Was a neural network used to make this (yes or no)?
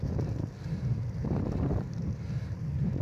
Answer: no